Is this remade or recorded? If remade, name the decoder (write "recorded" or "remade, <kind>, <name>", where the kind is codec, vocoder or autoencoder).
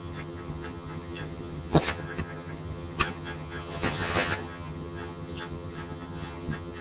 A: remade, vocoder, HiFi-GAN